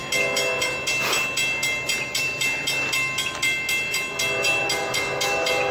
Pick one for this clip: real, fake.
real